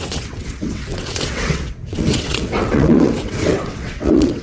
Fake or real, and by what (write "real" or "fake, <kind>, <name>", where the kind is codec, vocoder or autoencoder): fake, vocoder, WaveNeXt